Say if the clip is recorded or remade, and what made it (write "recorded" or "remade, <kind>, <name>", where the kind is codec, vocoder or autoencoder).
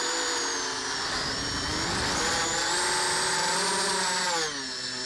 recorded